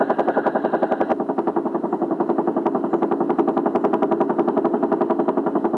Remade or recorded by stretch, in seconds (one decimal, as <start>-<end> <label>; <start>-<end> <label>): 0.0-5.8 recorded